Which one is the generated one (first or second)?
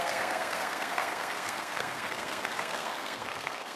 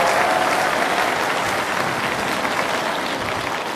first